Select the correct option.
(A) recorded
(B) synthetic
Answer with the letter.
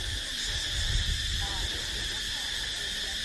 A